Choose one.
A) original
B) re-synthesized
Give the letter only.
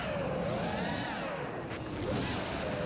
A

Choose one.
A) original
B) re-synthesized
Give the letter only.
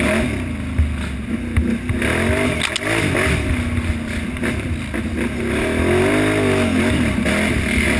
A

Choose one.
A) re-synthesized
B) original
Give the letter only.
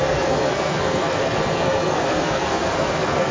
A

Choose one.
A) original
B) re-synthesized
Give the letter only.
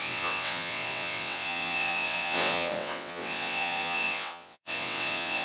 B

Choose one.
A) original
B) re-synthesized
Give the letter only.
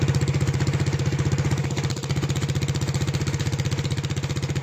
A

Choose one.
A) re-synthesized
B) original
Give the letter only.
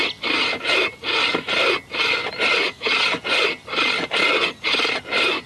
B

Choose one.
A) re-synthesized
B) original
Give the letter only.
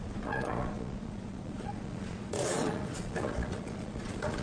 A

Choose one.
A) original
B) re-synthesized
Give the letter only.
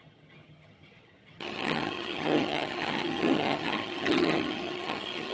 B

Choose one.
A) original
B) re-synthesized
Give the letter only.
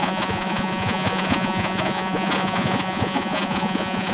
B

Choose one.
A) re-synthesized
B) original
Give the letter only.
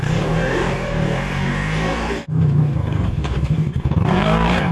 A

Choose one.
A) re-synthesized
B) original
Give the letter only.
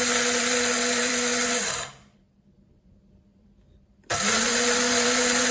A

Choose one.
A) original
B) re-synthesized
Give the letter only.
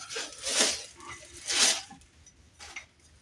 A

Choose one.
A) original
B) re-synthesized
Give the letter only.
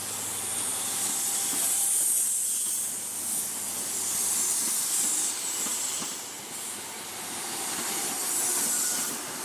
A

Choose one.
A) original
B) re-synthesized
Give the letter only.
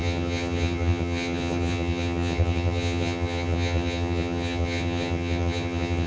B